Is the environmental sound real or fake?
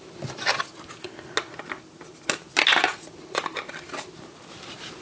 real